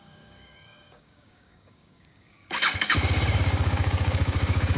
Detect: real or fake fake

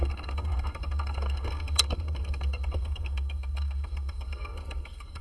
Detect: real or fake fake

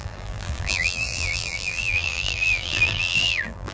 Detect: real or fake fake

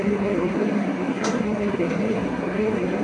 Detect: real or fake fake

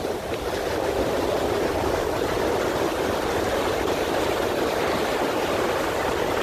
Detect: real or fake fake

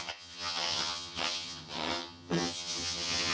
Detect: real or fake fake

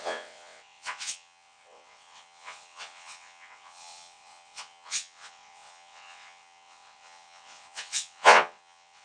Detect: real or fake fake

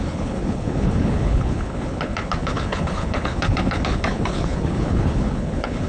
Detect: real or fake fake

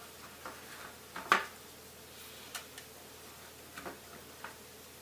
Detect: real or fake real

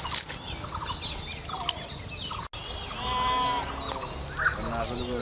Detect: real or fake real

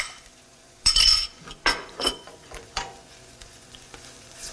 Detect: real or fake fake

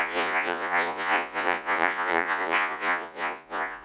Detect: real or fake fake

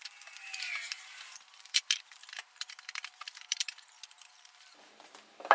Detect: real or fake fake